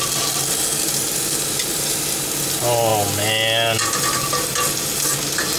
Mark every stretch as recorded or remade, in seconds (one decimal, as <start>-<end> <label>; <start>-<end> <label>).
0.0-5.6 recorded